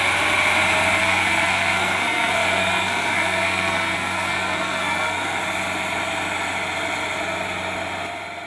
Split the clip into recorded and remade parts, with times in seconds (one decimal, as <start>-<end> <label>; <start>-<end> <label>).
0.0-1.0 recorded; 1.0-5.4 remade; 5.4-8.5 recorded